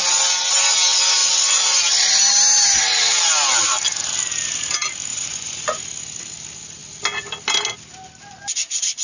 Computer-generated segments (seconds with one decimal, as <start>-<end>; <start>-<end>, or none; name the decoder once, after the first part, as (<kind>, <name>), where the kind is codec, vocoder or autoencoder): 1.2-1.8 (vocoder, Vocos); 5.1-5.8